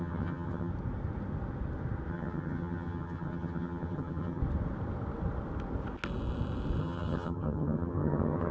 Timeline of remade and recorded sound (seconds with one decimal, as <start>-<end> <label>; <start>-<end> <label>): 0.0-0.7 remade; 0.7-2.1 recorded; 2.1-4.4 remade; 4.4-6.8 recorded; 6.8-8.5 remade